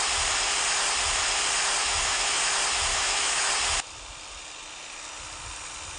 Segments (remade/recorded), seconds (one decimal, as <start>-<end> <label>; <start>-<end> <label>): 0.0-1.8 recorded; 1.8-2.4 remade; 2.4-2.9 recorded; 2.9-3.5 remade; 3.5-6.0 recorded